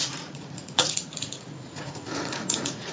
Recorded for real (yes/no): no